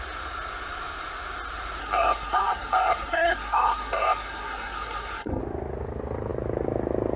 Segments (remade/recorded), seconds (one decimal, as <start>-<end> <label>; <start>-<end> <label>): 0.0-1.8 recorded; 1.8-5.4 remade; 5.4-7.2 recorded